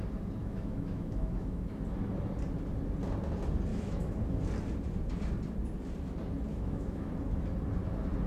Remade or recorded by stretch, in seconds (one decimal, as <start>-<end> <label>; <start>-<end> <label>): 0.0-0.4 recorded; 0.4-1.8 remade; 1.8-3.7 recorded; 3.7-4.4 remade; 4.4-6.5 recorded; 6.5-7.1 remade; 7.1-8.3 recorded